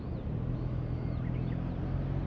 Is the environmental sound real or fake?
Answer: real